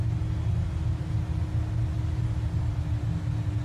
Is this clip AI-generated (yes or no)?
no